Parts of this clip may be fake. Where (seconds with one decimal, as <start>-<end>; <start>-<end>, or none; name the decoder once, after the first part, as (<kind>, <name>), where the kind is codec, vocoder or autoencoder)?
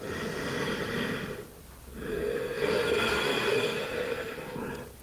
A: 2.1-4.6 (codec, SNAC)